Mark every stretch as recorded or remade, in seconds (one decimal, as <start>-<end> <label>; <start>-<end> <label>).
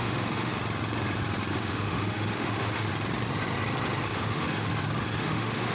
0.0-0.5 remade; 0.5-1.5 recorded; 1.5-2.9 remade; 2.9-4.1 recorded; 4.1-4.7 remade; 4.7-5.2 recorded; 5.2-5.7 remade